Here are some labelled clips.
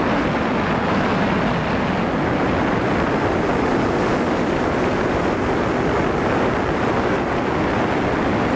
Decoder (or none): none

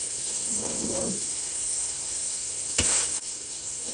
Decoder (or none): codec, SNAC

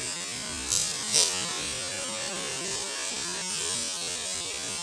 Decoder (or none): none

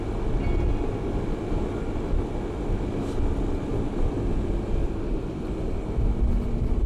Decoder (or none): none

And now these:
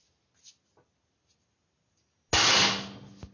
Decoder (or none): none